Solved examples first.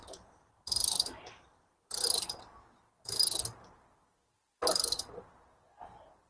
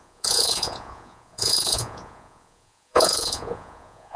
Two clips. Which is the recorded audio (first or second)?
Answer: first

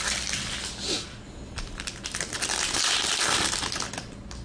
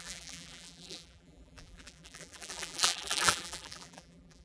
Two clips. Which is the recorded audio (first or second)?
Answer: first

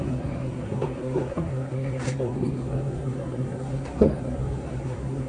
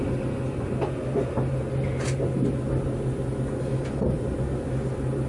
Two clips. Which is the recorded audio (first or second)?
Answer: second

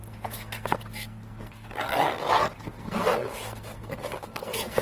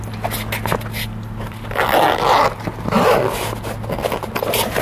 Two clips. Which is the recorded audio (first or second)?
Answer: second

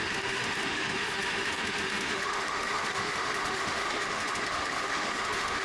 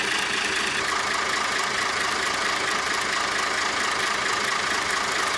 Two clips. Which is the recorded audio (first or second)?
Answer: second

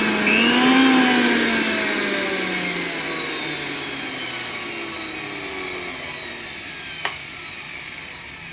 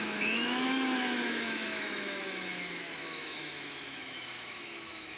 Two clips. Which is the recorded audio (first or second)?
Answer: first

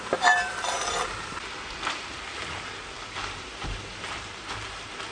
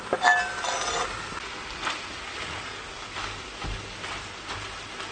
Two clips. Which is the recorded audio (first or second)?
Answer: second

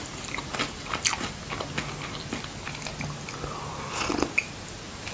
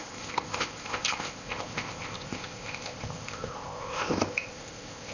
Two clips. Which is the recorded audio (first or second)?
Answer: first